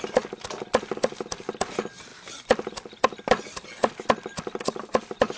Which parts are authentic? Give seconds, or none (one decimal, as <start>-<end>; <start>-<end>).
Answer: 0.0-5.4